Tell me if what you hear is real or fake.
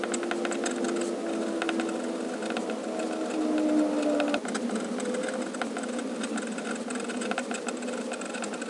real